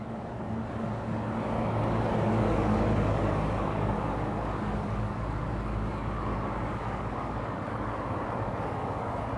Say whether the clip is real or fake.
fake